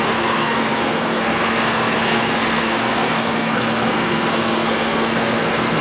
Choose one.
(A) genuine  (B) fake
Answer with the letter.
B